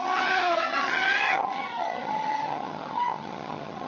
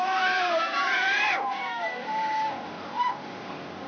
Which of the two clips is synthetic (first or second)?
first